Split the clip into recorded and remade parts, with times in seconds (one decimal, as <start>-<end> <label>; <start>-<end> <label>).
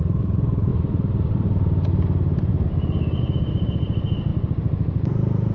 0.0-0.7 remade; 0.7-3.2 recorded; 3.2-5.5 remade